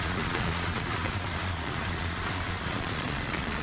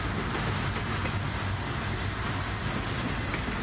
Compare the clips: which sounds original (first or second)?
second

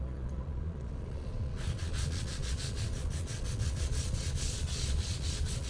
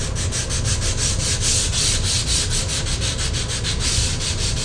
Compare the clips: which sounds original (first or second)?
second